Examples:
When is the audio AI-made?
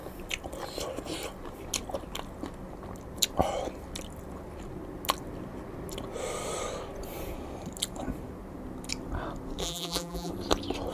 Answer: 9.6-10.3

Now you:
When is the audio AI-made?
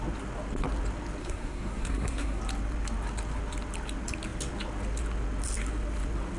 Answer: 1.2-2.4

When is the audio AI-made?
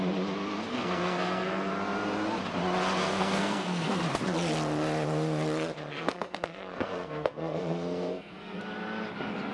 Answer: 0.7-1.7; 3.0-4.0; 5.9-8.6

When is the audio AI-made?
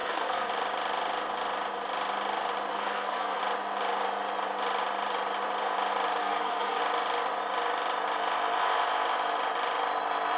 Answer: 0.0-0.5; 2.7-3.4; 6.2-6.8